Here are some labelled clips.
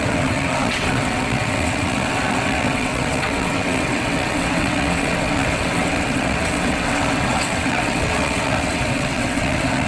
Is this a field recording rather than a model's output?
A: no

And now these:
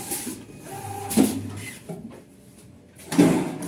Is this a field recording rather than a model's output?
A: yes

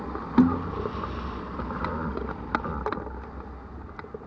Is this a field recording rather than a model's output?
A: yes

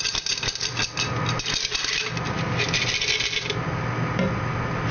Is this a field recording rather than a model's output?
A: yes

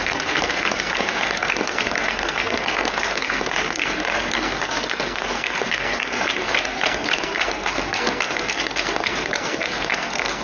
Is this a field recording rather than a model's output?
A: no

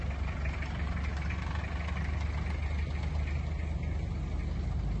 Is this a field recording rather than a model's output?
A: yes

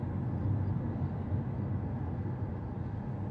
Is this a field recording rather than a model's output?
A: yes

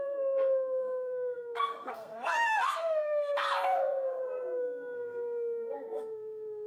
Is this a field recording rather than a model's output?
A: no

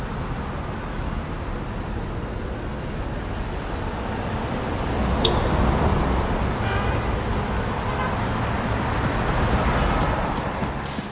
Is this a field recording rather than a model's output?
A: yes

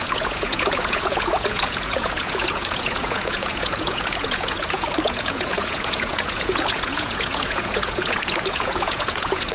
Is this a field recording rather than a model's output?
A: no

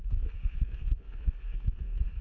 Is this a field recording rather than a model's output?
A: no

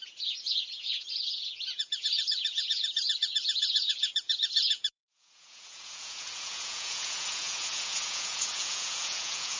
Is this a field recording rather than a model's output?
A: no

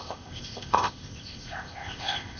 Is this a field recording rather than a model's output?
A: no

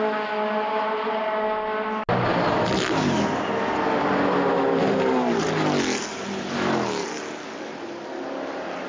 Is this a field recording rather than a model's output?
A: yes